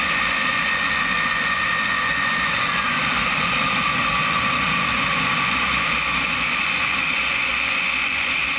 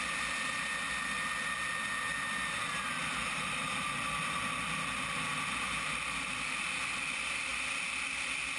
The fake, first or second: first